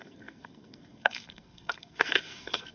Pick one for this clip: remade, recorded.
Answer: remade